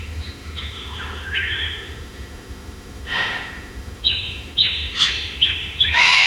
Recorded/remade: remade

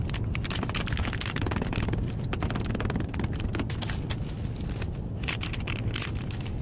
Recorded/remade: recorded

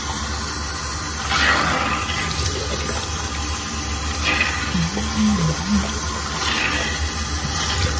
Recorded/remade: recorded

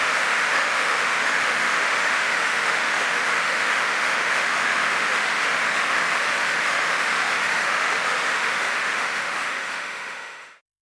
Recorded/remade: remade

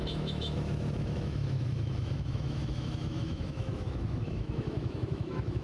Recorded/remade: remade